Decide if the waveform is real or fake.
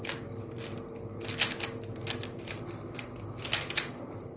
real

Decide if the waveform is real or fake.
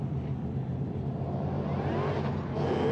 real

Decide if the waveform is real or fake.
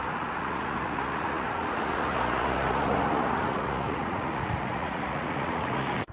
fake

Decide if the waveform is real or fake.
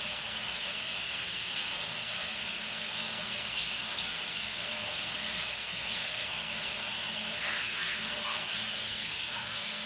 fake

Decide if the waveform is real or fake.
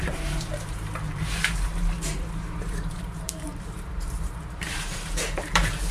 fake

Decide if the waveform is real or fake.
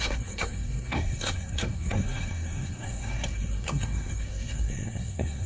fake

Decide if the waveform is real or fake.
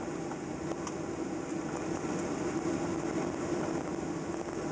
real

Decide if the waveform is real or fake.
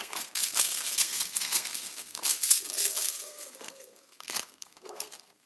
fake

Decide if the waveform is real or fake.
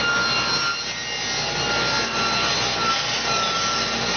real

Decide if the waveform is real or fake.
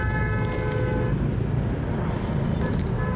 real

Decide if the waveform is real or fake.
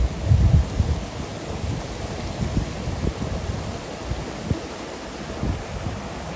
real